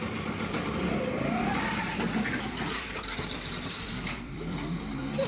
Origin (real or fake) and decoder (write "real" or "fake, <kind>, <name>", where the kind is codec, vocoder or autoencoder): fake, vocoder, BigVGAN v2